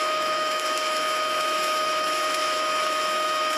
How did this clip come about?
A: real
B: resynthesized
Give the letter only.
B